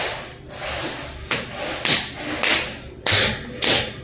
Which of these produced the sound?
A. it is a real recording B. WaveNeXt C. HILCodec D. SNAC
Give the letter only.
A